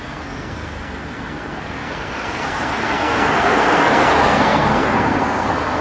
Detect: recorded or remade remade